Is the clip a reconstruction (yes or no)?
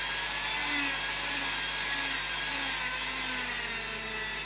no